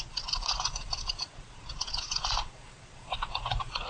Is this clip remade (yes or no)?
yes